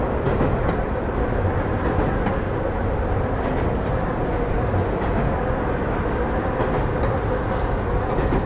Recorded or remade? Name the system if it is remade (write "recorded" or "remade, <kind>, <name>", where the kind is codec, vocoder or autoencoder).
recorded